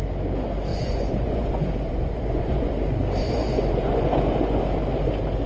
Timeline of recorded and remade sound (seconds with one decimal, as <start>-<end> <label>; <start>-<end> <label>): 0.0-0.7 recorded; 0.7-2.7 remade; 2.7-3.2 recorded; 3.2-4.6 remade; 4.6-5.5 recorded